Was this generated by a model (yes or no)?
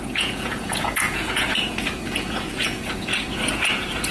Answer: yes